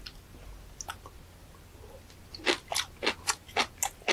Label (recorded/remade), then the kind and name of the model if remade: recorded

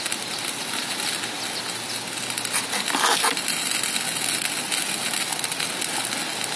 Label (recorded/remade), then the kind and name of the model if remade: recorded